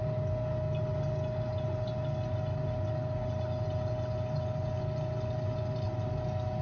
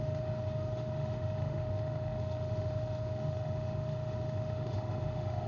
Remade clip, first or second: second